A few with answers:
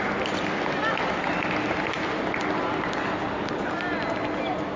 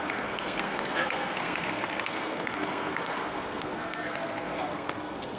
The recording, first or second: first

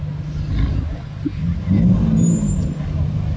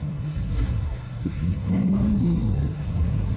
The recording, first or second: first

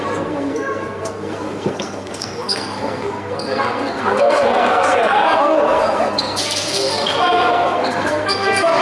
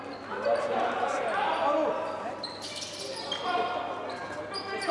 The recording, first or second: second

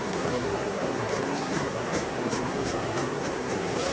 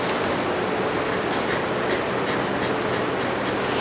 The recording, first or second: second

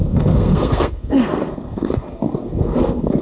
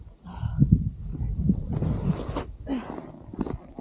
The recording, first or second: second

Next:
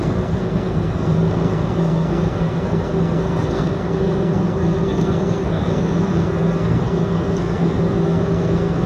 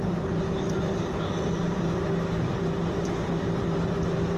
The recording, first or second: second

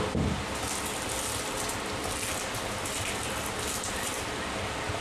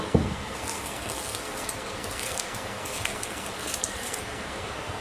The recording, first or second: first